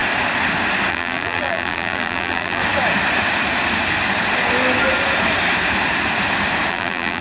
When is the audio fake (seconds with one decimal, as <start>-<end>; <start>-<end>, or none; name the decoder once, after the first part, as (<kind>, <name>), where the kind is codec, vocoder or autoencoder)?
0.9-2.6 (vocoder, BigVGAN v2); 6.7-7.2